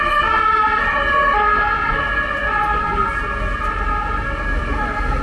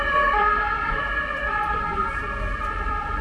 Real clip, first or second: first